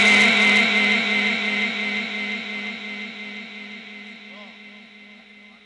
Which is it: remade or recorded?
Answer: recorded